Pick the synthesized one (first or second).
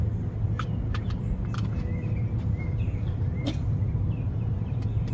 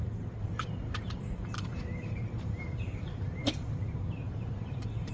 second